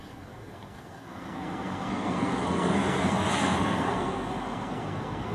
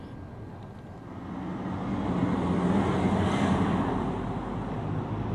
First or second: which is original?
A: second